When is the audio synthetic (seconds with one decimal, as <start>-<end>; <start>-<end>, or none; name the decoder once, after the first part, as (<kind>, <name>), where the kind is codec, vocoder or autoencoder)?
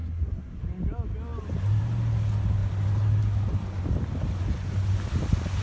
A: 0.0-0.6 (codec, SNAC)